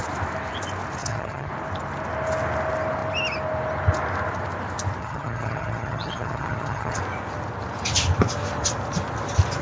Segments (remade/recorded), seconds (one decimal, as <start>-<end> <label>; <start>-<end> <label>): 0.0-1.0 recorded; 1.0-1.5 remade; 1.5-5.0 recorded; 5.0-7.0 remade; 7.0-9.6 recorded